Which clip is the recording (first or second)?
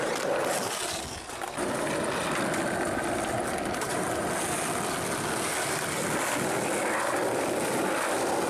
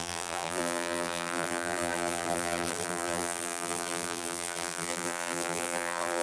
first